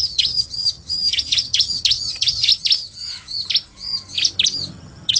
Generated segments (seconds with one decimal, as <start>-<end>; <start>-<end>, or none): 0.0-2.5; 4.7-5.2

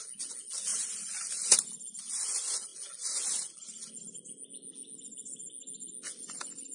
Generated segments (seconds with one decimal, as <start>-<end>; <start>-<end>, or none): none

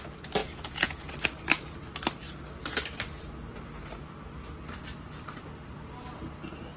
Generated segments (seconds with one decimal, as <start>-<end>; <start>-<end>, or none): 0.4-1.1

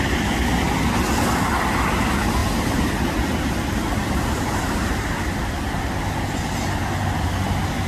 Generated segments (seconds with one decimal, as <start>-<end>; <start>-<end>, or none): 2.4-5.1

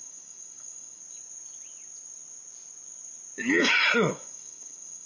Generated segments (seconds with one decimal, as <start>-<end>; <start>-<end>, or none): 0.0-1.0; 4.1-5.1

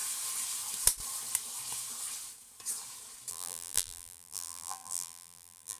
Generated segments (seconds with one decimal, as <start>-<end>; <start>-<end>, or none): 3.3-5.8

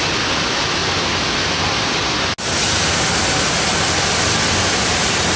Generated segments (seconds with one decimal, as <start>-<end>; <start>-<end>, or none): none